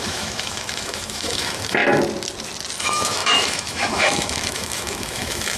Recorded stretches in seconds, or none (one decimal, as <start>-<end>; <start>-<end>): 1.8-2.8